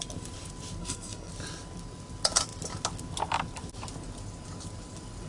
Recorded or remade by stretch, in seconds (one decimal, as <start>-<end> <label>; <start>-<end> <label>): 0.0-0.8 recorded; 0.8-1.3 remade; 1.3-5.3 recorded